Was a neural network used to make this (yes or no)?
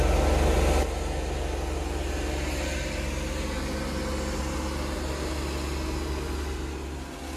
no